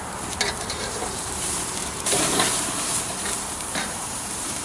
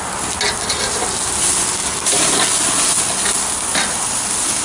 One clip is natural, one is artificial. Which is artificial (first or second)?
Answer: first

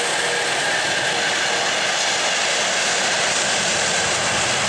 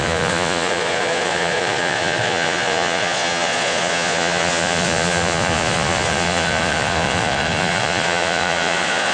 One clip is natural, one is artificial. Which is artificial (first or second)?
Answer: second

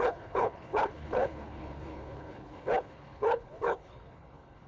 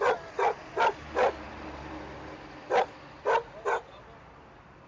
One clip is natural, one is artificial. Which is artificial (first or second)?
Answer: first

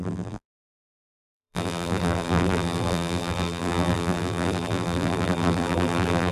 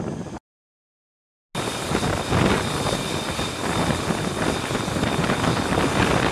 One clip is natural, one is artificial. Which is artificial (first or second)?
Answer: first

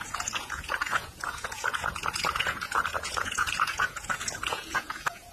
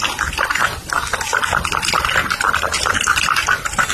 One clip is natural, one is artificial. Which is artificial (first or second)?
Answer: first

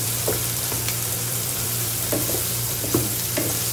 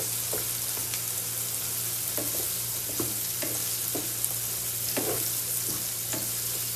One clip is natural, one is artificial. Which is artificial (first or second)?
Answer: first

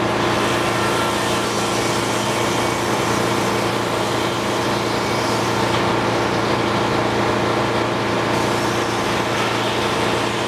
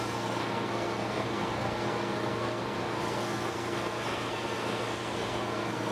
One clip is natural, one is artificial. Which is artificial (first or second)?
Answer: second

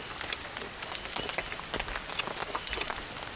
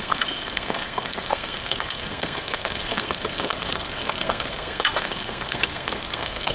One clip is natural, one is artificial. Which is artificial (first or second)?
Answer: second